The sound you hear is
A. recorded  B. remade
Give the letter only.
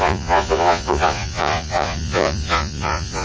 B